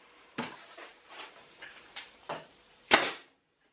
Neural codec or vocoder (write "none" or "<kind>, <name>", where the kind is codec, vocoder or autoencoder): vocoder, BigVGAN v2